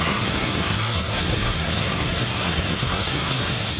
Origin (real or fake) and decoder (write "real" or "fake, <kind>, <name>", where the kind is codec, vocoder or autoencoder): fake, codec, SNAC